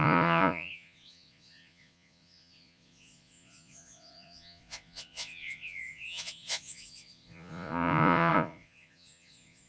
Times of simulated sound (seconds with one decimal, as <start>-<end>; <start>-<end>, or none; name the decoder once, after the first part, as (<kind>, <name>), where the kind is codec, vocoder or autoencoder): 0.0-9.7 (vocoder, Vocos)